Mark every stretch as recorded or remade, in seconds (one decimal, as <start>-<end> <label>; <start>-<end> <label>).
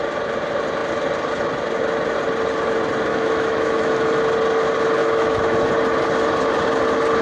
0.0-3.1 recorded; 3.1-4.2 remade; 4.2-5.0 recorded; 5.0-5.7 remade; 5.7-7.2 recorded